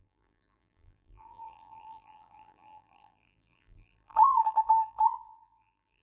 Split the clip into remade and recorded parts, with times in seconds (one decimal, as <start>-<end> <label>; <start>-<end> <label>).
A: 0.0-6.0 remade